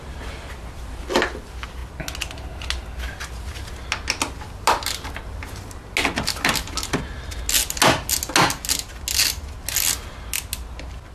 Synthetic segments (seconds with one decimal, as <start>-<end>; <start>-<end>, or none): none